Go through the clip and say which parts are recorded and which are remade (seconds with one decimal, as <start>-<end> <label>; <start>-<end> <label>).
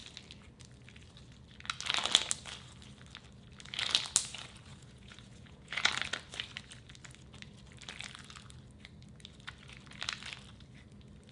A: 0.0-4.7 recorded; 4.7-5.9 remade; 5.9-11.3 recorded